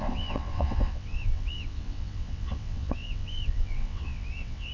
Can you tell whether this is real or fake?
fake